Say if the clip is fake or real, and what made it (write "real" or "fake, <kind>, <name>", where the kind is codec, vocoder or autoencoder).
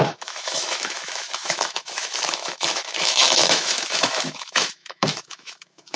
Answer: fake, autoencoder, DAC-VAE